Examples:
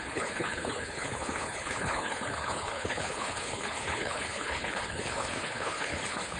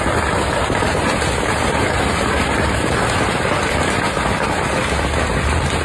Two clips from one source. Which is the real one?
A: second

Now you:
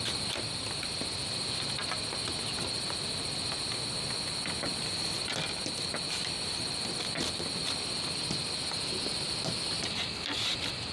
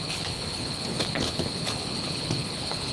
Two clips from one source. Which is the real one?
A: first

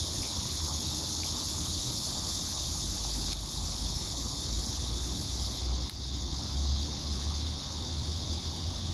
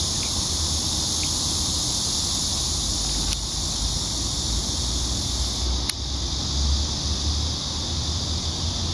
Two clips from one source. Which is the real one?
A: second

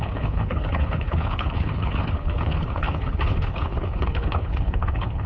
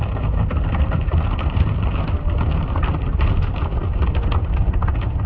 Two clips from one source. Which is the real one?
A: second